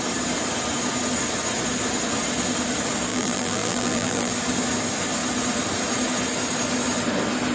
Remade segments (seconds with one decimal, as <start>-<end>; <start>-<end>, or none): 3.1-4.3